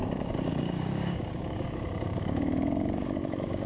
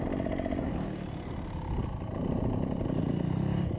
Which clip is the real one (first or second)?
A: second